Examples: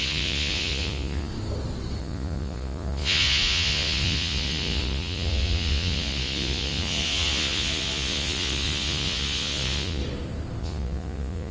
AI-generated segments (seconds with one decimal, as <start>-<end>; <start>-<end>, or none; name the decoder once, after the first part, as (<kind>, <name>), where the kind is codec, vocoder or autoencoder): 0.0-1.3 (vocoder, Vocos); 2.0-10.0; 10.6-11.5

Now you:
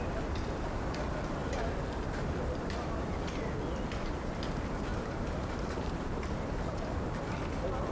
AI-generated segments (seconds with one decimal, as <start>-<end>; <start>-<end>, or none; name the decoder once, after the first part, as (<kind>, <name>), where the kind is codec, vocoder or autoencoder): 4.9-7.2 (vocoder, BigVGAN v2)

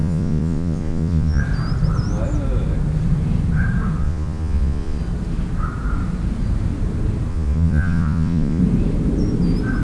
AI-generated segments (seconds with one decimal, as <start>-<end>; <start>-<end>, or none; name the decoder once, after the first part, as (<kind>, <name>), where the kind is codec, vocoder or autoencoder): 0.0-1.4 (vocoder, Vocos); 4.0-5.0; 7.3-8.6

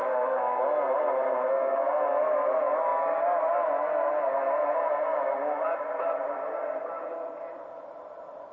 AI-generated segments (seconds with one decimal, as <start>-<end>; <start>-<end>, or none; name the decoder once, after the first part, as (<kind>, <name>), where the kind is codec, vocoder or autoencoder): 0.0-0.6 (codec, SNAC); 1.5-2.0

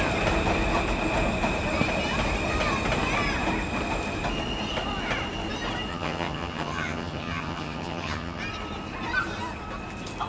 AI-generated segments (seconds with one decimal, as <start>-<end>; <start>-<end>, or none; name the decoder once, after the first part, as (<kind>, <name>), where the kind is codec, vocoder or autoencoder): 5.9-8.4 (vocoder, HiFi-GAN)

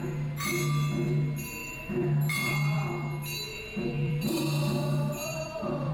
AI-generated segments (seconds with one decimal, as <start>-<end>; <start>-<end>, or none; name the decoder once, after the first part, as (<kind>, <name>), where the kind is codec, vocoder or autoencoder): 1.6-2.9 (vocoder, BigVGAN v2); 3.5-4.4; 5.3-5.9

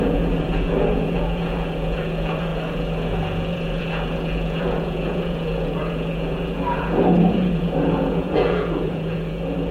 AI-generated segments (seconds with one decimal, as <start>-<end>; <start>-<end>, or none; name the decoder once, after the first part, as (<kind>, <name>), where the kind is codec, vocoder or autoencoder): 0.0-9.7 (vocoder, Vocos)

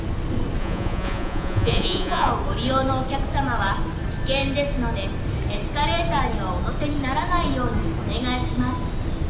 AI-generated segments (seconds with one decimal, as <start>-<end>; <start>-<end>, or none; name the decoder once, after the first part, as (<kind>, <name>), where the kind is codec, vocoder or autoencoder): 0.6-2.3 (vocoder, Vocos)